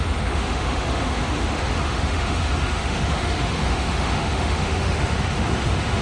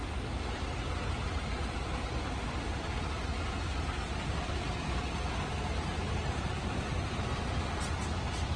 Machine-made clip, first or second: first